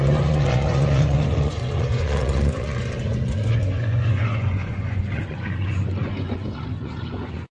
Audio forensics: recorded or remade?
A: remade